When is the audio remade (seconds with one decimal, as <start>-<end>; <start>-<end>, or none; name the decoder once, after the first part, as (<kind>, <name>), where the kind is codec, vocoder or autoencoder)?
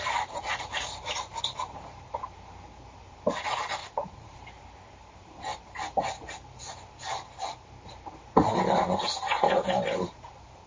3.8-4.3 (vocoder, Vocos)